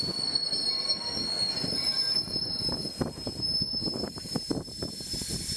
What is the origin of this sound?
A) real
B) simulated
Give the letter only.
A